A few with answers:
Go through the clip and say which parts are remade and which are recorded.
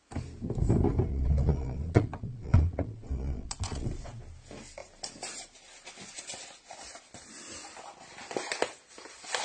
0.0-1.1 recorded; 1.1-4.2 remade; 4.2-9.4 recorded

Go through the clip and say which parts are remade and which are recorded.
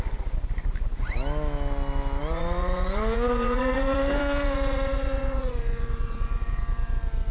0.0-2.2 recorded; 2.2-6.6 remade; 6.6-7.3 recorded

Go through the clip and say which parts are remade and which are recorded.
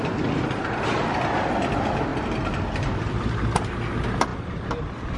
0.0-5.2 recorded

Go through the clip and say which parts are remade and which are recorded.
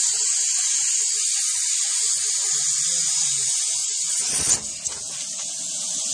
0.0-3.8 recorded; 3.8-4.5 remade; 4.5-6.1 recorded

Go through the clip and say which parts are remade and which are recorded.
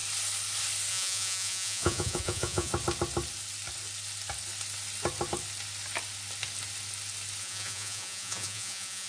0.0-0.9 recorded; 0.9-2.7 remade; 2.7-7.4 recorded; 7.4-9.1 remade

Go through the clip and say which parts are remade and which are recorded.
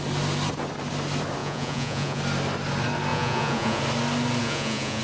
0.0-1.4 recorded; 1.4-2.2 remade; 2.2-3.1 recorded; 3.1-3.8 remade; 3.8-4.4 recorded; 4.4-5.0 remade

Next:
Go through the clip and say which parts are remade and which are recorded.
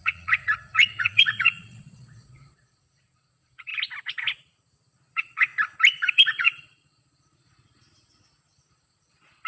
0.0-3.7 remade; 3.7-5.1 recorded; 5.1-5.5 remade; 5.5-6.1 recorded; 6.1-9.5 remade